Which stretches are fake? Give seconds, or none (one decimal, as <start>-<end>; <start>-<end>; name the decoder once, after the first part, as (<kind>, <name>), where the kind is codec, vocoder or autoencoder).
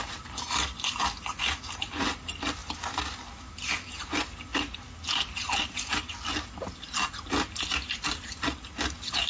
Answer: none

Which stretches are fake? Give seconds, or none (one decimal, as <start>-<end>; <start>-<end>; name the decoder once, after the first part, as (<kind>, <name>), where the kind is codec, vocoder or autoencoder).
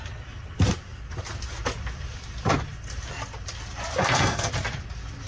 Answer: 4.0-4.5 (codec, SNAC)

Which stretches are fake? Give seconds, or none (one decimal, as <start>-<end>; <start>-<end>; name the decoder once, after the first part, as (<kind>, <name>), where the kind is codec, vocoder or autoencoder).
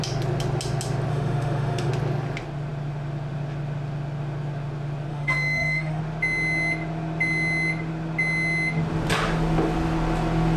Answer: 1.1-1.9 (autoencoder, DAC-VAE); 5.1-6.0